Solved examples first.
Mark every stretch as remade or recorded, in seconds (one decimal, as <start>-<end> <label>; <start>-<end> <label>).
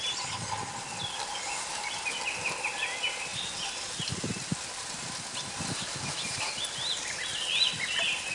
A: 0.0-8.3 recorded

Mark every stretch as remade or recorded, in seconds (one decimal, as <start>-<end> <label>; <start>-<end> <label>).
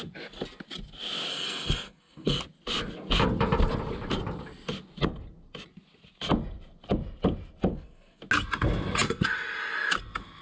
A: 0.0-1.3 recorded; 1.3-2.4 remade; 2.4-7.7 recorded; 7.7-8.2 remade; 8.2-10.4 recorded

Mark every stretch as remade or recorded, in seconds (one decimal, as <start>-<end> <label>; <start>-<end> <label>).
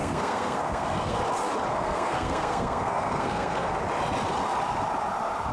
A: 0.0-1.2 remade; 1.2-1.7 recorded; 1.7-3.8 remade; 3.8-5.5 recorded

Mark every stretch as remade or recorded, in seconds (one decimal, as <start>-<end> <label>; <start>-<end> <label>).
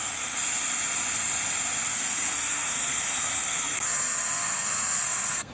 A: 0.0-1.9 recorded; 1.9-5.5 remade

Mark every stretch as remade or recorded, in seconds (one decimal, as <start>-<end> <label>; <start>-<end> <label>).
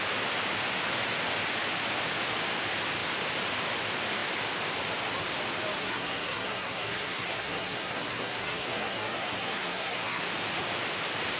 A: 0.0-5.8 recorded; 5.8-10.2 remade; 10.2-11.4 recorded